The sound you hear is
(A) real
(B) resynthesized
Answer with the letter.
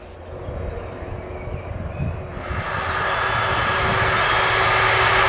A